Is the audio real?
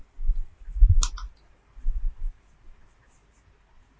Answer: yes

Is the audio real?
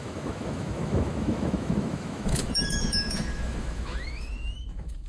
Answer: no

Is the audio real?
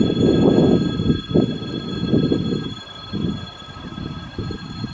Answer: yes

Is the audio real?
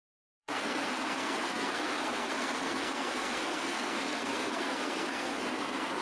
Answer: no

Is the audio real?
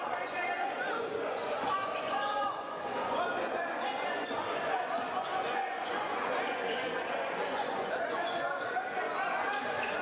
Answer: no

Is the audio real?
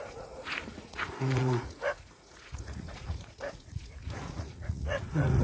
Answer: no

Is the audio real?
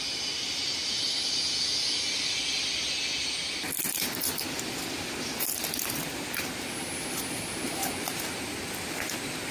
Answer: yes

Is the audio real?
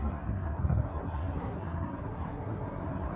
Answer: no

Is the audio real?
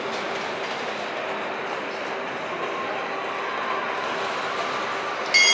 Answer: yes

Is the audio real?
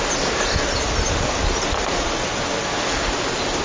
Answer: yes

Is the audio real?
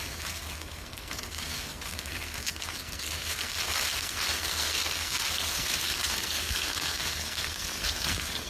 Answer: no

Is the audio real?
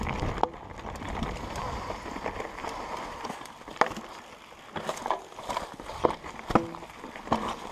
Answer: yes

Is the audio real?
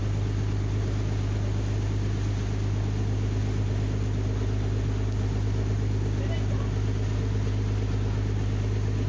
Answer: yes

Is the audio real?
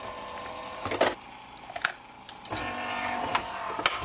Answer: yes